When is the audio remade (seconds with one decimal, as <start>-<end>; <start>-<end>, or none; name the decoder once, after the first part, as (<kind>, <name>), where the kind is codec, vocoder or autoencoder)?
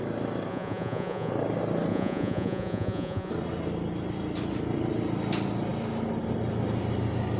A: 0.5-1.3 (vocoder, Vocos); 1.9-3.3